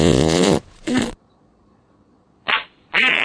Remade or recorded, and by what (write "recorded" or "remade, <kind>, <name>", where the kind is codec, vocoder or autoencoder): remade, vocoder, Vocos